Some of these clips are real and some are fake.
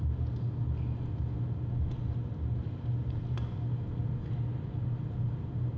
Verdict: real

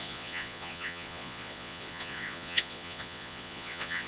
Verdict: fake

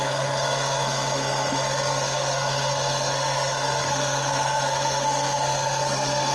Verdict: fake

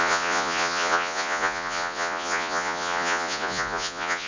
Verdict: fake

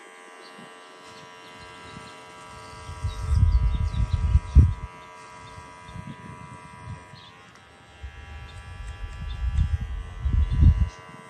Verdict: real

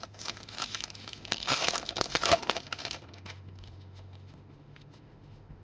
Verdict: fake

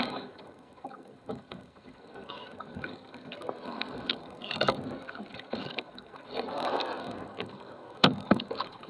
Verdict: fake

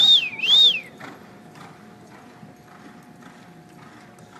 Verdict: real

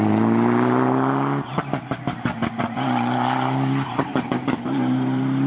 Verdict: real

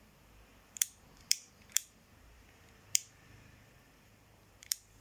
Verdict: fake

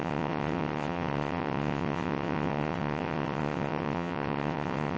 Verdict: fake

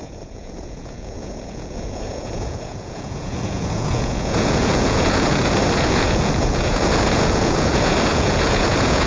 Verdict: fake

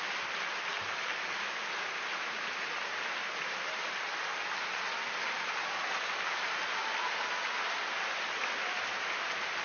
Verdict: real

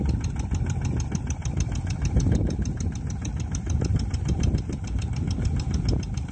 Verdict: real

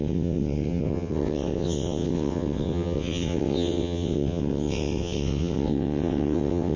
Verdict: fake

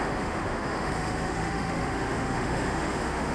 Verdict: fake